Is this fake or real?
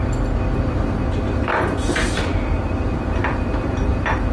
real